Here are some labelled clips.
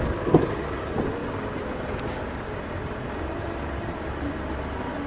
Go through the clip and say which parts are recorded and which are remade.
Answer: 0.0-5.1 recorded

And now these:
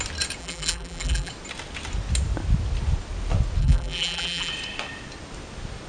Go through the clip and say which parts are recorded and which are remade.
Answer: 0.0-0.4 recorded; 0.4-1.3 remade; 1.3-3.6 recorded; 3.6-4.5 remade; 4.5-5.9 recorded

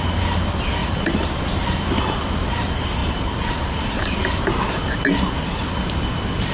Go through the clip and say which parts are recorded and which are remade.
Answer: 0.0-0.8 recorded; 0.8-1.4 remade; 1.4-3.0 recorded; 3.0-4.4 remade; 4.4-6.5 recorded

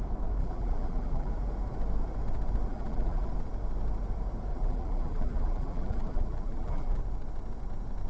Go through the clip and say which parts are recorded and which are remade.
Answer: 0.0-0.4 recorded; 0.4-1.3 remade; 1.3-2.7 recorded; 2.7-3.3 remade; 3.3-4.5 recorded; 4.5-7.0 remade; 7.0-8.1 recorded